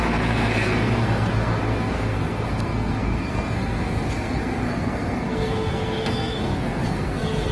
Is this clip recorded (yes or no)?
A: no